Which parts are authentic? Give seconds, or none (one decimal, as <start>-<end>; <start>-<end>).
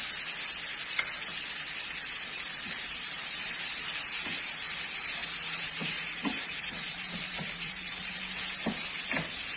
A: 0.0-5.2; 8.1-9.6